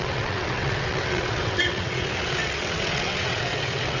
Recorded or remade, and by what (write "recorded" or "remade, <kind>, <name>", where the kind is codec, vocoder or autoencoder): remade, vocoder, WaveNeXt